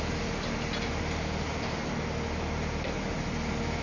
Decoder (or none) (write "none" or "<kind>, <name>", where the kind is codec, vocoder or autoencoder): none